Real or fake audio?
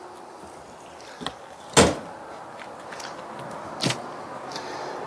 real